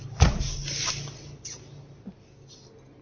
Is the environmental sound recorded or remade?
recorded